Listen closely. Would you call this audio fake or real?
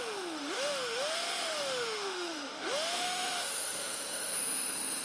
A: fake